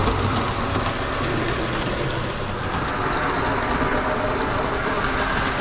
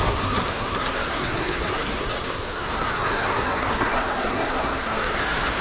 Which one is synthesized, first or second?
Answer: second